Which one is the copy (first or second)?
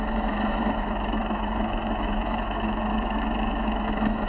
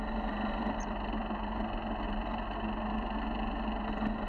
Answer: first